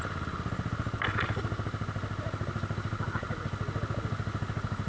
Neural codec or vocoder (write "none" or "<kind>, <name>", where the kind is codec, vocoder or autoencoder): none